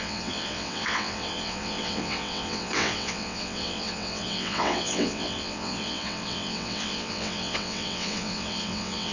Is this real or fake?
fake